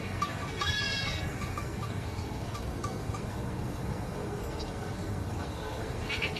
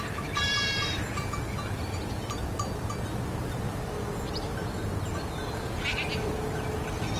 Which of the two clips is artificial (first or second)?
first